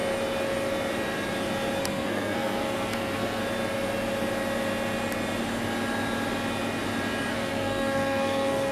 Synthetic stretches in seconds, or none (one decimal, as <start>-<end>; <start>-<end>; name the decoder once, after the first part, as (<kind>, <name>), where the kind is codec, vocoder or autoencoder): 1.8-3.4 (codec, SNAC); 7.3-8.7

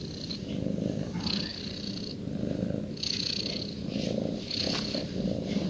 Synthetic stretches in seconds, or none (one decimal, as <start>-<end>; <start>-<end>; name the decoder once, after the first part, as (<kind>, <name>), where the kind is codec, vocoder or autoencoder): none

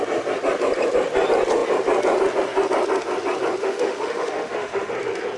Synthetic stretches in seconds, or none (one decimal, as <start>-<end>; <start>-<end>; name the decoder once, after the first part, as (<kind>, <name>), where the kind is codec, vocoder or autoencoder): 3.6-4.9 (autoencoder, DAC-VAE)

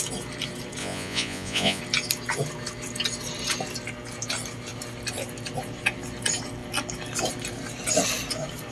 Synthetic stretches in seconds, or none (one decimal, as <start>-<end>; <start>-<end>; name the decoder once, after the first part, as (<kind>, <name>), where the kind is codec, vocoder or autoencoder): 0.8-1.8 (vocoder, Vocos)